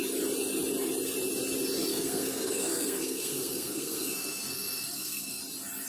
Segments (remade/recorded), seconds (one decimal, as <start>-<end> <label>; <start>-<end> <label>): 0.0-1.9 recorded; 1.9-5.4 remade; 5.4-5.9 recorded